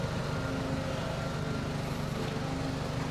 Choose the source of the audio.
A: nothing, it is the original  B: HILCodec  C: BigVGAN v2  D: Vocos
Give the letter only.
A